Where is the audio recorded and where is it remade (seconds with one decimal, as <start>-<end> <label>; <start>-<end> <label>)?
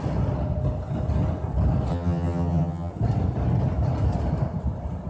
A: 0.0-1.9 recorded; 1.9-2.9 remade; 2.9-5.1 recorded